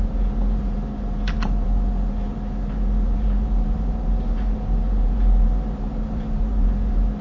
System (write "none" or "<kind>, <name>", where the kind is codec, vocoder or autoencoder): vocoder, BigVGAN v2